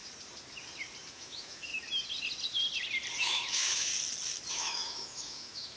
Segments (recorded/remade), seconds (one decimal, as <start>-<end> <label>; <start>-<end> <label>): 0.0-1.1 recorded; 1.1-1.7 remade; 1.7-3.2 recorded; 3.2-3.9 remade; 3.9-4.5 recorded; 4.5-5.8 remade